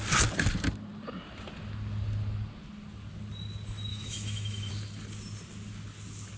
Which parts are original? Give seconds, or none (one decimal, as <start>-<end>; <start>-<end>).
0.0-3.9; 4.7-6.4